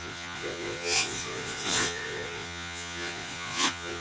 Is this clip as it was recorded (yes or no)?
no